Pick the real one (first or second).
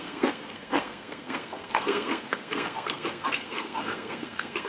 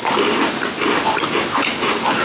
second